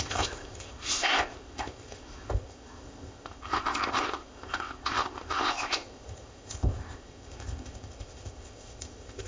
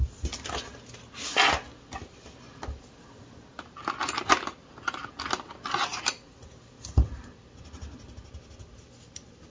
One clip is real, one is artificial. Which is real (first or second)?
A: second